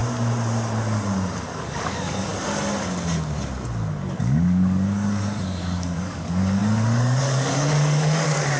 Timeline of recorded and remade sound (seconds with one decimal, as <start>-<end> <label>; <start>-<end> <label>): 0.0-1.4 recorded; 1.4-2.3 remade; 2.3-3.9 recorded; 3.9-8.6 remade